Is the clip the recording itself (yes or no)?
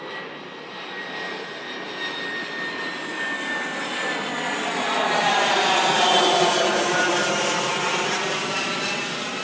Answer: yes